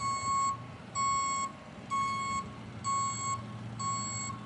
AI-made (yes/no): no